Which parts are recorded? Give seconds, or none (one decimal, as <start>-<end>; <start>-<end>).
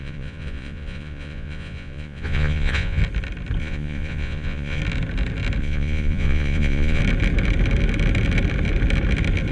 3.0-3.6; 4.8-5.6; 7.0-9.5